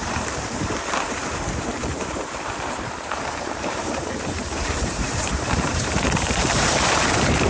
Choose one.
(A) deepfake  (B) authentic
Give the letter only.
A